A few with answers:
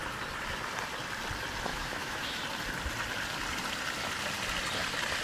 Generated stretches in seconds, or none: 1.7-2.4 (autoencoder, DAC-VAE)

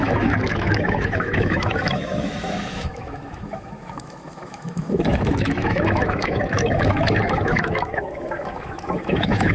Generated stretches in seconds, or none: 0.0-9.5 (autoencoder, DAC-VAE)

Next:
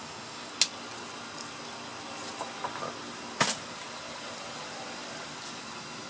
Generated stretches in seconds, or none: 0.0-0.5 (autoencoder, DAC-VAE)

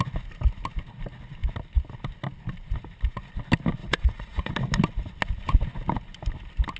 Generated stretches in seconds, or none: 3.8-4.5 (vocoder, Vocos)

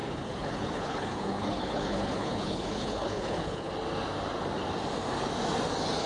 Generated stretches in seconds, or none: 0.0-3.7 (codec, HILCodec)

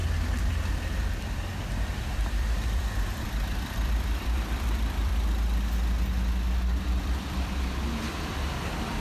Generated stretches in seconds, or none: 0.7-5.1 (vocoder, BigVGAN v2); 7.0-9.0